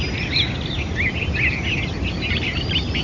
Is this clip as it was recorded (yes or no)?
yes